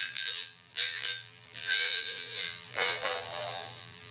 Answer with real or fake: fake